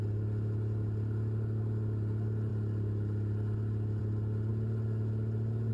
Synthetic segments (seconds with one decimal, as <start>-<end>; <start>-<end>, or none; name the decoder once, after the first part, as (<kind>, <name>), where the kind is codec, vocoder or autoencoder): none